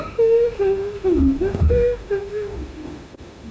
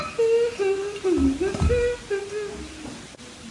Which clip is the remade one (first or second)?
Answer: first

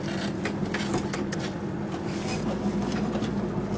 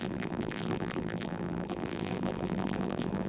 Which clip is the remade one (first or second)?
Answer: second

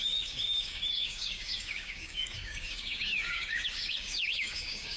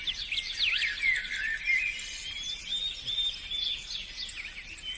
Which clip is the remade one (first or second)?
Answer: first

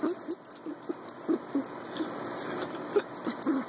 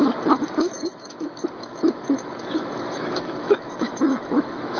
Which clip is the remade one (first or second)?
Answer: second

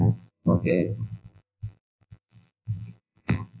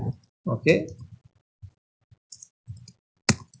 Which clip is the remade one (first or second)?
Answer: first